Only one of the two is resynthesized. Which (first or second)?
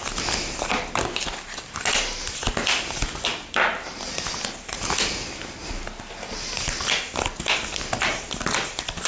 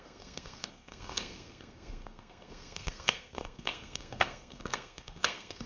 second